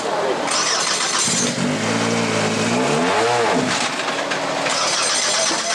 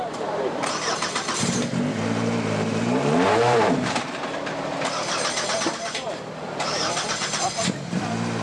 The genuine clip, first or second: first